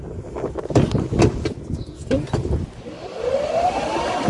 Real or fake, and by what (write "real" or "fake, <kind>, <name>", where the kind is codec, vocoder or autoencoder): real